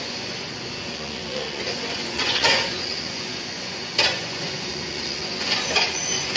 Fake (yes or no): yes